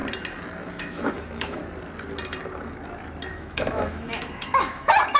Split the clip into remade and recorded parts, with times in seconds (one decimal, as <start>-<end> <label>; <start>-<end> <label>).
0.0-0.7 recorded; 0.7-1.6 remade; 1.6-3.3 recorded; 3.3-5.2 remade